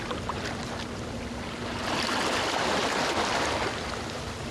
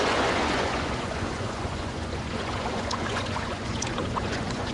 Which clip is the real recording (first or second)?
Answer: first